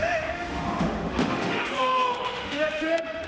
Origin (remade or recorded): remade